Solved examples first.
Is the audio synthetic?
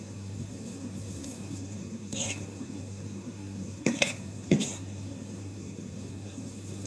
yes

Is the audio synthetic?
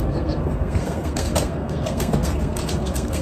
yes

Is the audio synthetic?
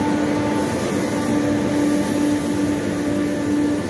no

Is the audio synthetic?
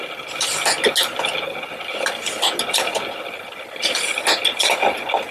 no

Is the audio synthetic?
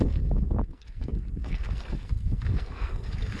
yes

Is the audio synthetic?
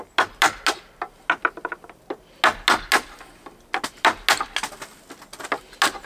no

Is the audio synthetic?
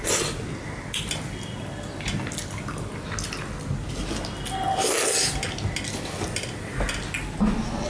no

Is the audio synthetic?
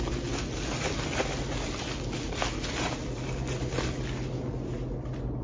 no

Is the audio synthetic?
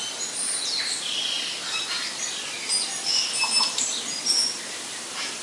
no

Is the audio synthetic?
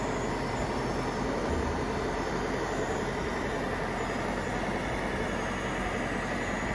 no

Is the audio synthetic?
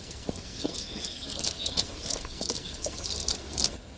yes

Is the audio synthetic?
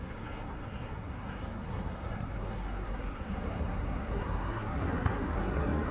yes